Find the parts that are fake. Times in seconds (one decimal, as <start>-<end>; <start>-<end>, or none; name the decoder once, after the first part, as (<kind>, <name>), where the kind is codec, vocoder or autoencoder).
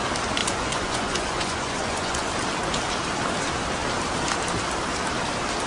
0.4-2.3 (vocoder, Vocos)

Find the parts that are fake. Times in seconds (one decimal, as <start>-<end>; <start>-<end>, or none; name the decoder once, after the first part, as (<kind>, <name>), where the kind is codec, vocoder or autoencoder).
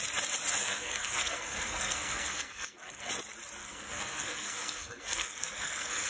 0.6-3.1 (codec, SNAC); 3.6-6.1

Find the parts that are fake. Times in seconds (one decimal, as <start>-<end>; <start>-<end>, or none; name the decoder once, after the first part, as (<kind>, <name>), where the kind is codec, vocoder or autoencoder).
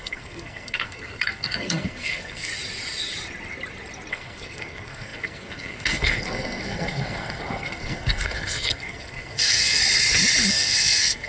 0.0-2.5 (codec, SNAC); 4.1-9.8; 10.5-11.3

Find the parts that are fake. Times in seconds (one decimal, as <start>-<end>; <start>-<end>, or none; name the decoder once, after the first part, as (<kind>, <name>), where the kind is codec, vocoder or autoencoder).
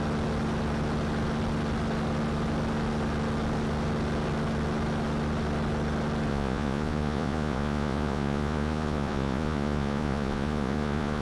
6.3-11.2 (vocoder, Vocos)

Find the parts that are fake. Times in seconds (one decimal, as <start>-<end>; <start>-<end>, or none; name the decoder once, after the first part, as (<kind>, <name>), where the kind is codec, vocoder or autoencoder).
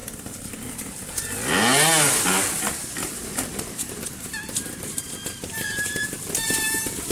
0.0-1.1 (vocoder, BigVGAN v2); 2.8-7.1